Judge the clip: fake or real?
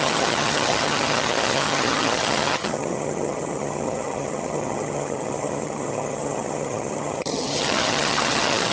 fake